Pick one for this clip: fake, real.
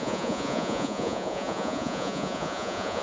fake